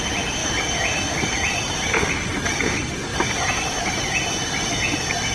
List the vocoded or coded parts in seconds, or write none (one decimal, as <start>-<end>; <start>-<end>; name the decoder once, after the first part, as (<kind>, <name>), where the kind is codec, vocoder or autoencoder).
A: none